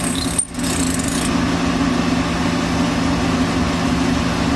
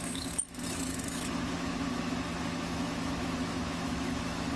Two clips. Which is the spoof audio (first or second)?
second